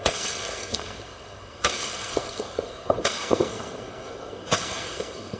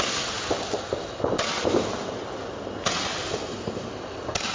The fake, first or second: first